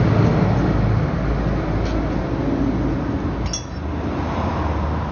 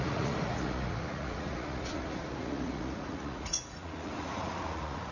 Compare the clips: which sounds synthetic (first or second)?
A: second